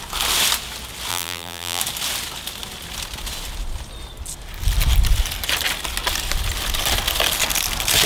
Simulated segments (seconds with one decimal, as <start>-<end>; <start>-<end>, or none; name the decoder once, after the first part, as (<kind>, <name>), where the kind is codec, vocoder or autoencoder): 1.1-1.8 (vocoder, BigVGAN v2)